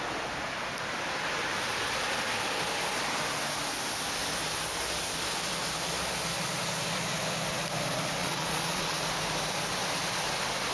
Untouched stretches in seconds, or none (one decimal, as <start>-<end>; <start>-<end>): 0.0-8.2; 9.0-10.7